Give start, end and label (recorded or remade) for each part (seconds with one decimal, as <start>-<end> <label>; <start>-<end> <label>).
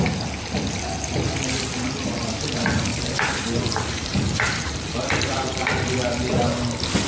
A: 0.0-2.9 recorded; 2.9-6.4 remade; 6.4-7.1 recorded